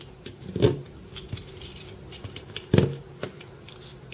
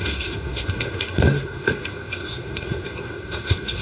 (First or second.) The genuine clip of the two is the first